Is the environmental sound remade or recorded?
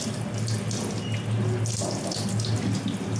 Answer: recorded